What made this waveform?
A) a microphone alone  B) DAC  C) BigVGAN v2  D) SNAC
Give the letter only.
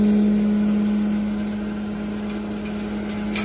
A